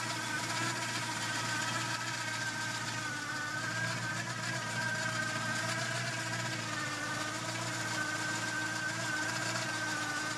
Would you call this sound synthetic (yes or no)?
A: no